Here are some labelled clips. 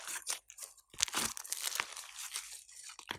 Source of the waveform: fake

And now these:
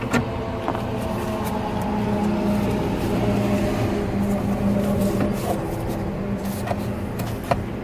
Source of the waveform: real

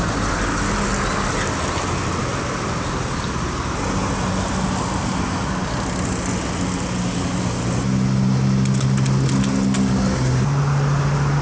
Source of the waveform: real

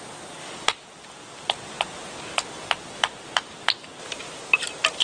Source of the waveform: real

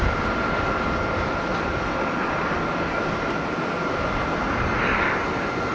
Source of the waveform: real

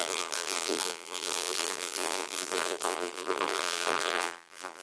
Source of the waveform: fake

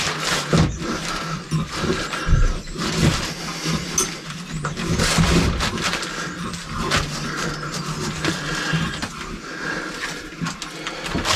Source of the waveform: real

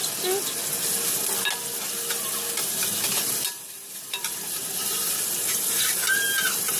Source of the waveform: real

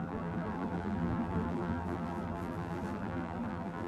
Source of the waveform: fake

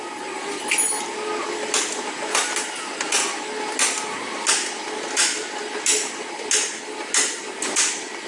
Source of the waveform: real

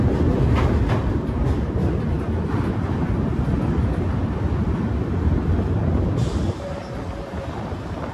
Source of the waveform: real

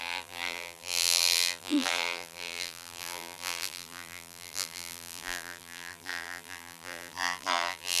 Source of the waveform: fake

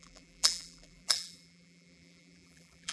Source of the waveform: fake